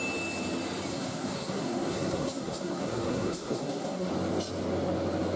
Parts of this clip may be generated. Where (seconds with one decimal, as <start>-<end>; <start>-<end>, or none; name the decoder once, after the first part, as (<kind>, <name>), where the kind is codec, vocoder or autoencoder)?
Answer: 0.9-4.1 (codec, SNAC)